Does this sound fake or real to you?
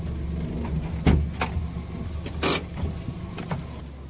real